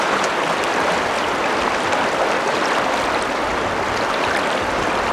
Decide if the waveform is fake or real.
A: real